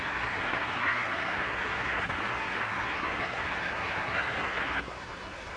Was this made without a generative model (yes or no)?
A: no